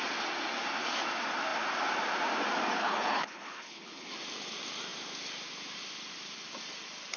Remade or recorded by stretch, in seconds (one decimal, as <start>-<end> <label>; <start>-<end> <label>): 0.0-2.8 recorded; 2.8-4.1 remade; 4.1-7.2 recorded